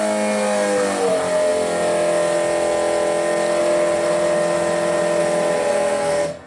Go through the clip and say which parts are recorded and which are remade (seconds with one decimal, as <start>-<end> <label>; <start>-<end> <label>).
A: 0.0-5.7 recorded; 5.7-6.5 remade